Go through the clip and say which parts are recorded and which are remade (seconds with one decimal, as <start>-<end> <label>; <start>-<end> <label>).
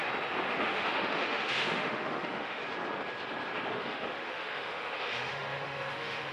0.0-0.6 recorded; 0.6-2.6 remade; 2.6-3.7 recorded; 3.7-6.3 remade